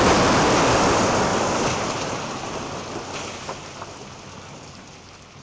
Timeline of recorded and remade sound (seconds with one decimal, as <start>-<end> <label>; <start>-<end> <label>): 0.0-5.4 recorded